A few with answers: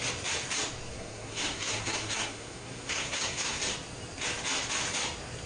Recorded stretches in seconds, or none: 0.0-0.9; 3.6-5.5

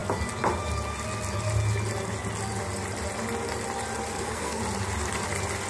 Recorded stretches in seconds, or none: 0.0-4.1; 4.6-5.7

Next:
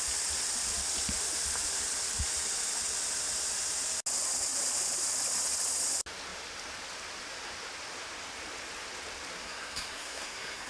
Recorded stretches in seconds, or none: 0.0-9.4

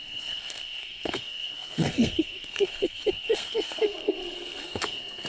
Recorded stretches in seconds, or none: none

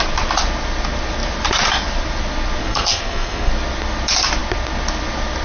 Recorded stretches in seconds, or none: 0.0-2.6; 3.5-5.4

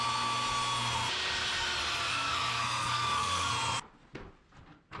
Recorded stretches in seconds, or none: 0.0-2.1; 3.5-5.0